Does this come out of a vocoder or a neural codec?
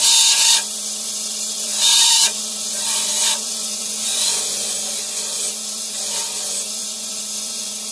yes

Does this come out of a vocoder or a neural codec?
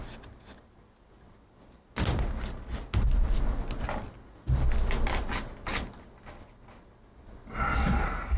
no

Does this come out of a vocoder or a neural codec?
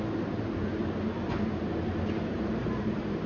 no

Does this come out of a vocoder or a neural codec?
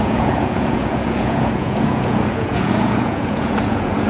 yes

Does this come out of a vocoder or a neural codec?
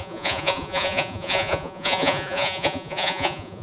yes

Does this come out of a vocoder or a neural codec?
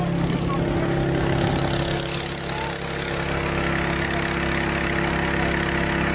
no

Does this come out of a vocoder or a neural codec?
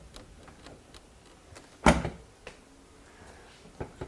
no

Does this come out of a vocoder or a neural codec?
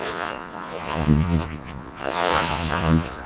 yes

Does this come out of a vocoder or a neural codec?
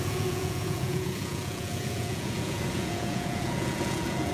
yes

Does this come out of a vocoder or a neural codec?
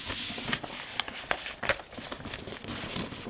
no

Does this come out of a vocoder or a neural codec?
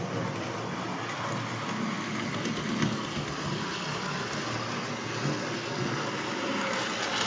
no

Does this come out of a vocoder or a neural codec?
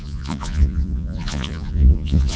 yes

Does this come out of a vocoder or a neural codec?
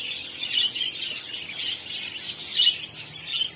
no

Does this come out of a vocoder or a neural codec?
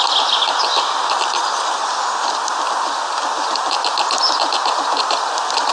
no